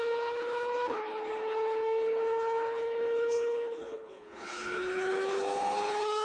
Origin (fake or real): fake